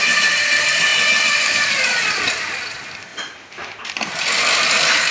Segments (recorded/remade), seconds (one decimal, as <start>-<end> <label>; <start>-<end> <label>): 0.0-5.1 recorded